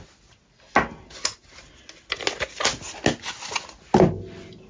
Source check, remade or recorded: recorded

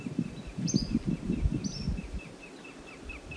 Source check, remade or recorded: recorded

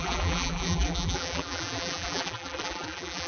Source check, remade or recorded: remade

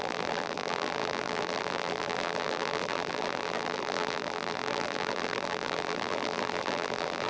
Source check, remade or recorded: remade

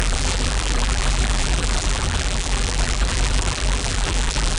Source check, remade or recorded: remade